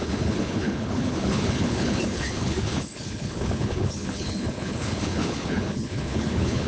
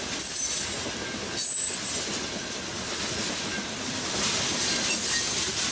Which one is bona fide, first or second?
second